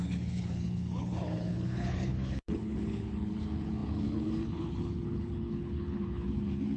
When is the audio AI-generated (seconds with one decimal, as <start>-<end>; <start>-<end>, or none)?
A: 0.0-6.8